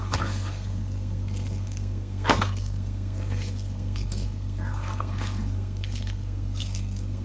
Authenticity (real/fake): fake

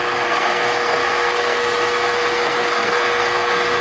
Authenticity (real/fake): fake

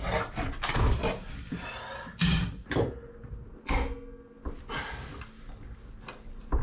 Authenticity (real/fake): real